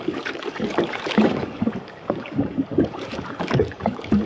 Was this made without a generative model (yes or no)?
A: no